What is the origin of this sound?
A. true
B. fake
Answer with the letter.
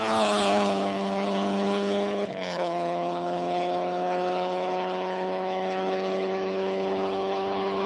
B